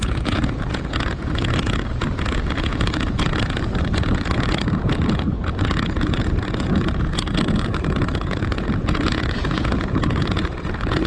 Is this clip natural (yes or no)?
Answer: no